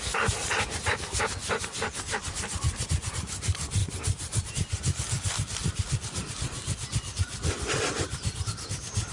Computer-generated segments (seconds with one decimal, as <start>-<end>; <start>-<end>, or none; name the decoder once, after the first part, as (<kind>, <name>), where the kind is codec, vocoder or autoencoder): none